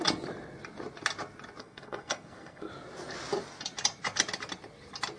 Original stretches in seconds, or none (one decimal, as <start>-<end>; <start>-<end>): 0.0-1.6; 2.7-5.2